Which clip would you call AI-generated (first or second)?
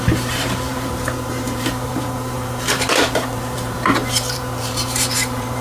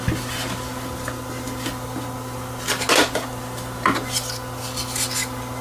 first